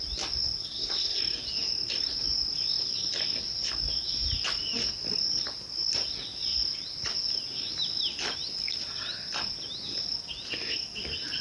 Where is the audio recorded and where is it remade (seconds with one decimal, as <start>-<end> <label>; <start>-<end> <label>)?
0.0-0.6 recorded; 0.6-1.2 remade; 1.2-11.4 recorded